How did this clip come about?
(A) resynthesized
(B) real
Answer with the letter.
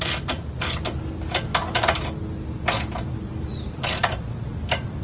B